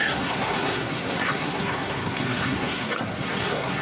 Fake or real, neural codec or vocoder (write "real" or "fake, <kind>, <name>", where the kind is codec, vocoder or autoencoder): fake, codec, SNAC